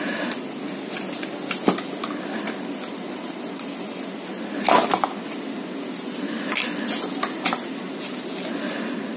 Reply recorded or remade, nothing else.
recorded